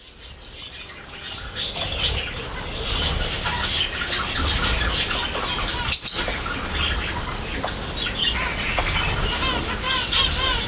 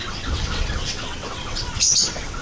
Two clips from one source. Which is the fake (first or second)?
second